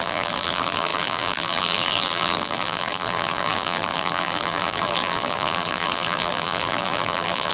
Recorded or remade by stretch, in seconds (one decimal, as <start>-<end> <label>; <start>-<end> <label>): 0.0-7.5 remade